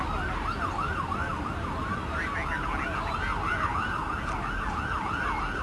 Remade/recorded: recorded